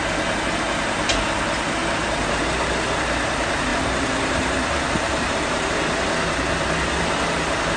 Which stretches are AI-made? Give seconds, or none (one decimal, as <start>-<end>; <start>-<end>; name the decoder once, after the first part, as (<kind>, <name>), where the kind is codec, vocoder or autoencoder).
1.8-2.4 (vocoder, BigVGAN v2); 3.7-5.8